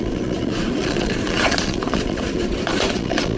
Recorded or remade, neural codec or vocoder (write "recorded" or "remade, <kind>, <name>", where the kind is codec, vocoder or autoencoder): remade, vocoder, Vocos